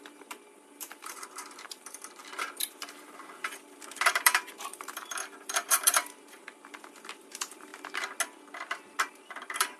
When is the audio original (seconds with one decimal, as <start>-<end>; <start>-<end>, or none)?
7.7-9.1